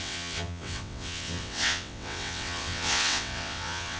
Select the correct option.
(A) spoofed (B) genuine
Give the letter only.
A